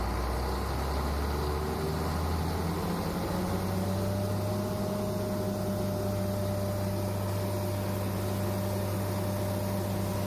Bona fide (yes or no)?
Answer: yes